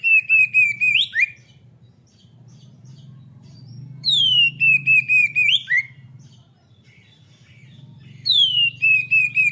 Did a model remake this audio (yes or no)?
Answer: yes